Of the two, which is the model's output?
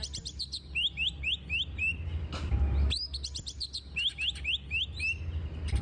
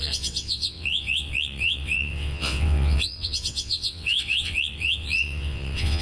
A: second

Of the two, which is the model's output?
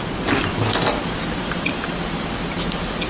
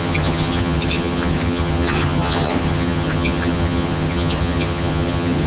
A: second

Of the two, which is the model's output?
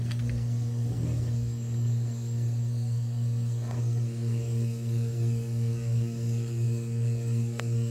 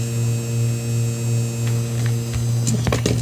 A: first